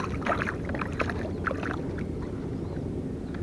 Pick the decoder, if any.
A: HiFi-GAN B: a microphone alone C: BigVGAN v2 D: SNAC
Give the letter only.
B